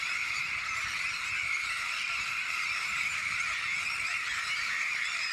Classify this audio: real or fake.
fake